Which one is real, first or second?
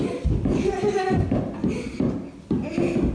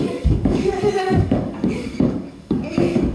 first